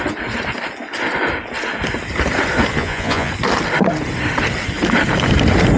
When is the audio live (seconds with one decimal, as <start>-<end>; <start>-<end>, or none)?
0.0-2.8; 3.3-5.8